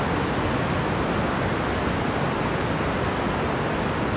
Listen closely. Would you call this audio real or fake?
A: real